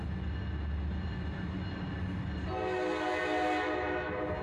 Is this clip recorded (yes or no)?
yes